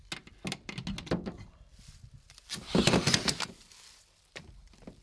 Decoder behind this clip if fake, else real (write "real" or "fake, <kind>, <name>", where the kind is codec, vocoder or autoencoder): real